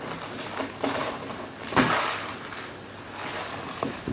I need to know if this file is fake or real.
real